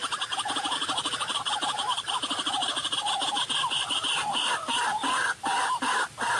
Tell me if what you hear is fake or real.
real